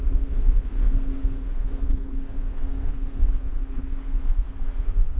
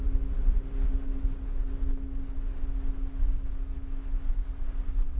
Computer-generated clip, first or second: first